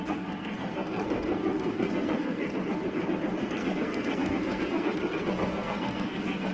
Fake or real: fake